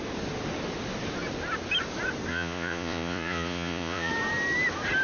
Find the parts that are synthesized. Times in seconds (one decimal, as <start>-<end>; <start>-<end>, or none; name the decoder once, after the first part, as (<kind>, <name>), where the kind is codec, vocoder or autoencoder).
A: 2.3-4.1 (vocoder, Vocos)